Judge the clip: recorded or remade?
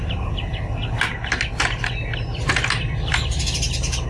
recorded